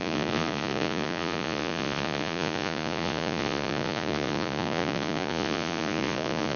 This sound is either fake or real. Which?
fake